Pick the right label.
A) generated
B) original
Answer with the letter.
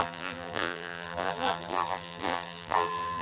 A